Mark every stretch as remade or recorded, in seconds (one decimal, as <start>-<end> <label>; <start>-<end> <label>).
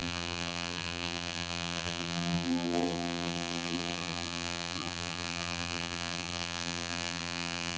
0.0-7.8 remade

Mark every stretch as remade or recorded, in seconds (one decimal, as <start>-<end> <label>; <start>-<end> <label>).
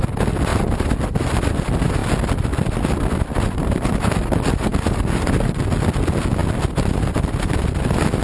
0.0-8.2 recorded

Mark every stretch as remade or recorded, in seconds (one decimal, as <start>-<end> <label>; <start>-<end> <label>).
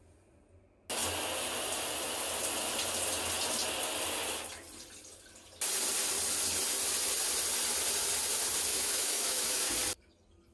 0.0-8.7 recorded; 8.7-9.7 remade; 9.7-10.5 recorded